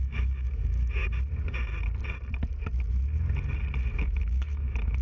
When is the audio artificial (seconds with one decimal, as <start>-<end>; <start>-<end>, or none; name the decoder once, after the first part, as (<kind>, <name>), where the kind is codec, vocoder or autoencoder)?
0.0-1.0 (autoencoder, DAC-VAE); 4.0-5.0